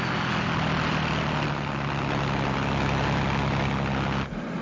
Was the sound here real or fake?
real